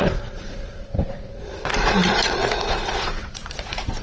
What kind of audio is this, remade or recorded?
remade